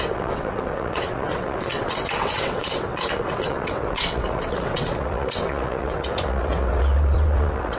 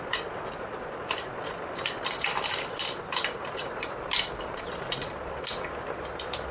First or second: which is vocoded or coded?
first